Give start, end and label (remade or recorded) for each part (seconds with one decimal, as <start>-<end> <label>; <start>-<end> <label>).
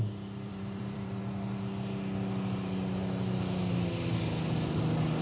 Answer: 0.0-0.5 recorded; 0.5-1.2 remade; 1.2-5.2 recorded